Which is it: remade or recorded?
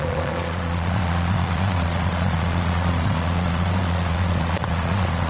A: remade